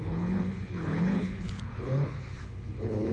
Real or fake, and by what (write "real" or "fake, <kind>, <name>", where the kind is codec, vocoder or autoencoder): fake, codec, HILCodec